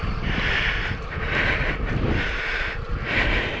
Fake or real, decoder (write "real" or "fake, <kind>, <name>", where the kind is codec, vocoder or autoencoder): real